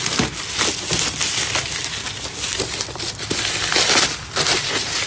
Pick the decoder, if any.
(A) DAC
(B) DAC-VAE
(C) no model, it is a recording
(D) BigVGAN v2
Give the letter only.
C